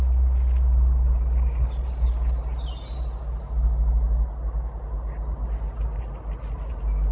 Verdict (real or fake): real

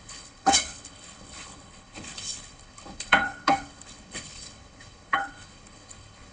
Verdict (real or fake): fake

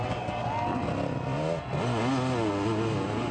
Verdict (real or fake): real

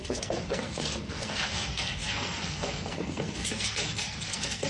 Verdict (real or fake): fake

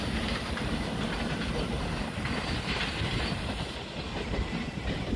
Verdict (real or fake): fake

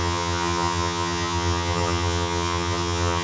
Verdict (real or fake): fake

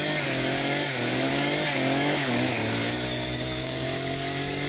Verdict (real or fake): fake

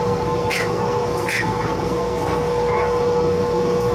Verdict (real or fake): fake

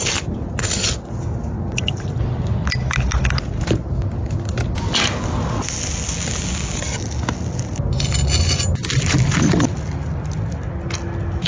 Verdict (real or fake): real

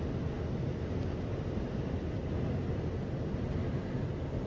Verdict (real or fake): real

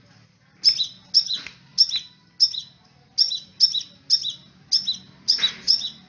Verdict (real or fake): real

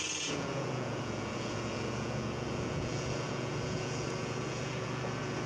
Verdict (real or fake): fake